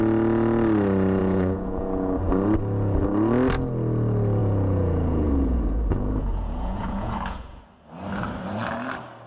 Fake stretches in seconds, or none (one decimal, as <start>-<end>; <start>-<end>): 1.2-1.8; 4.4-7.6